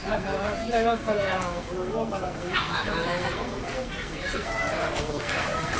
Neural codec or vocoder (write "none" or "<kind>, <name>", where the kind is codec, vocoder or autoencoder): codec, SNAC